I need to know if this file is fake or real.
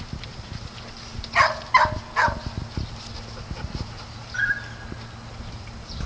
real